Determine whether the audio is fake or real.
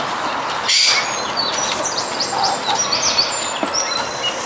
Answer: real